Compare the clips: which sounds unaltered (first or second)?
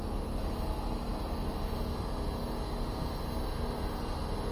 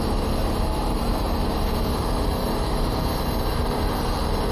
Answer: first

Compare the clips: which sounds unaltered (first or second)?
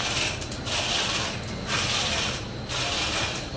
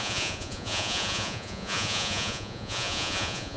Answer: first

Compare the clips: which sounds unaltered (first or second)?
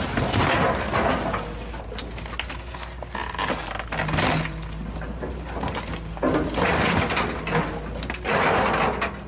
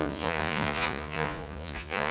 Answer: first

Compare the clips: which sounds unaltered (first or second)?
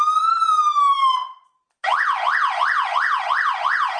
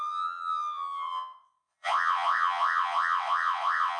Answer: first